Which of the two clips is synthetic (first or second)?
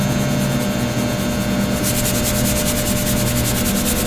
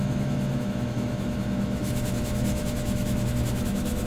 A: second